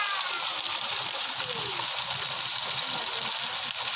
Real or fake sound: real